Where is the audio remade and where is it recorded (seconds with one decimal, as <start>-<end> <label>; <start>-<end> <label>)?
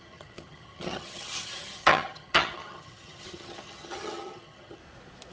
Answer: 0.0-4.8 remade; 4.8-5.3 recorded